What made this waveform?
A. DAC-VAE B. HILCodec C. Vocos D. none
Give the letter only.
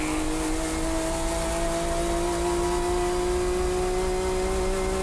D